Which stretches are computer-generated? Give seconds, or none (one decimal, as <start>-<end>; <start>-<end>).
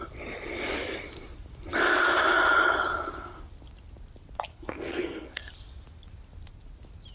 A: 4.5-5.5